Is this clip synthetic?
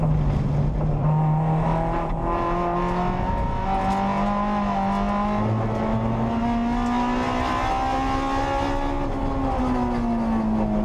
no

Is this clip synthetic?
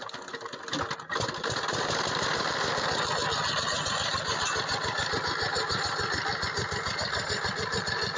no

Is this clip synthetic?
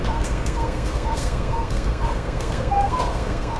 yes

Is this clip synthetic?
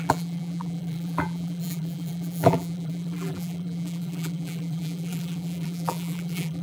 yes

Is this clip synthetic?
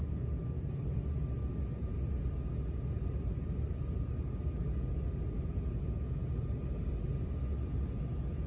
no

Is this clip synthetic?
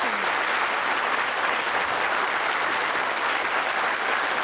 no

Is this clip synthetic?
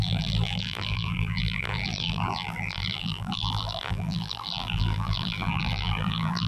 yes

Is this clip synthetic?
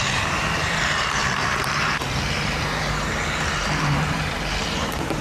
yes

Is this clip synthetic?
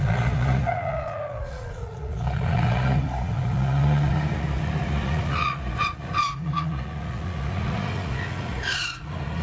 yes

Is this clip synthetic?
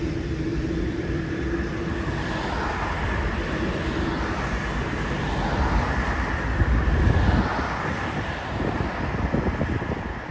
no